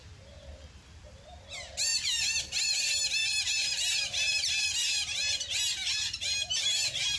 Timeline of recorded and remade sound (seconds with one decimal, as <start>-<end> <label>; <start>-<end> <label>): 0.0-1.9 recorded; 1.9-2.7 remade; 2.7-3.2 recorded; 3.2-4.5 remade; 4.5-7.2 recorded